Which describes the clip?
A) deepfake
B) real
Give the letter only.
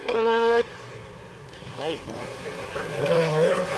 A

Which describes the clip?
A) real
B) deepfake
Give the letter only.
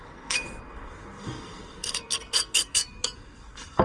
B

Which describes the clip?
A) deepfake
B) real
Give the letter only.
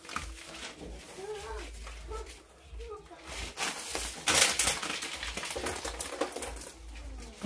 B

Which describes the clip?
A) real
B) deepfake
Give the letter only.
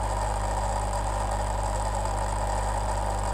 A